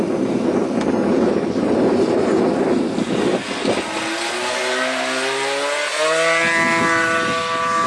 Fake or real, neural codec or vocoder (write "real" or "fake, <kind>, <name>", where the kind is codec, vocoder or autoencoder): real